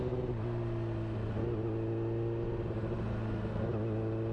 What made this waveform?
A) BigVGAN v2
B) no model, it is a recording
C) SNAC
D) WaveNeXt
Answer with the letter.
B